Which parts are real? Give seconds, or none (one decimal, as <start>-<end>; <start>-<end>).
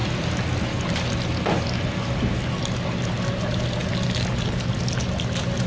0.0-5.7